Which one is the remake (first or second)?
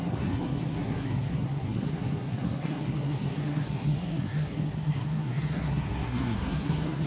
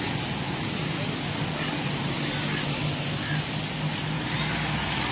first